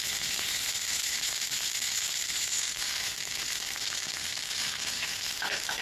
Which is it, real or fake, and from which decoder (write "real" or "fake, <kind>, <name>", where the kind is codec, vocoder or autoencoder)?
fake, autoencoder, DAC-VAE